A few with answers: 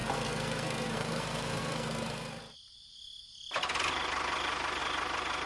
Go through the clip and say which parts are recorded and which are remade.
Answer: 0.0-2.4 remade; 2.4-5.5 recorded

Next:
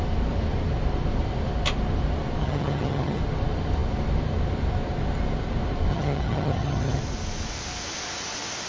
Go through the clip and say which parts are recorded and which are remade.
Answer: 0.0-2.4 recorded; 2.4-3.2 remade; 3.2-5.9 recorded; 5.9-7.0 remade; 7.0-8.7 recorded

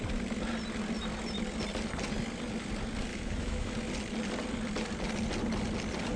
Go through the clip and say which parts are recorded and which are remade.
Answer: 0.0-3.1 recorded; 3.1-3.7 remade; 3.7-6.2 recorded

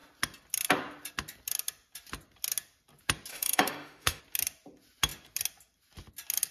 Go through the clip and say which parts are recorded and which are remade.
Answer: 0.0-3.3 recorded; 3.3-4.2 remade; 4.2-6.5 recorded

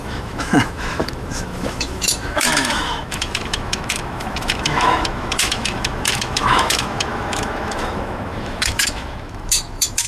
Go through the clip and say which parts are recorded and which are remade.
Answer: 0.0-10.1 remade

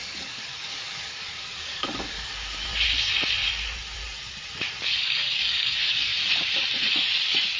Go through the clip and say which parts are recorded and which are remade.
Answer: 0.0-2.7 remade; 2.7-4.8 recorded; 4.8-6.1 remade; 6.1-7.6 recorded

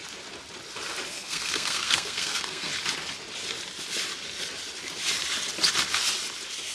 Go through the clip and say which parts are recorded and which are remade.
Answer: 0.0-1.1 recorded; 1.1-2.7 remade; 2.7-6.7 recorded

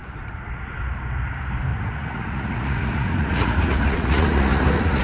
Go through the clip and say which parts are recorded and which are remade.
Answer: 0.0-1.7 recorded; 1.7-5.0 remade